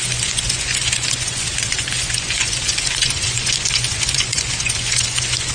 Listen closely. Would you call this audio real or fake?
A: fake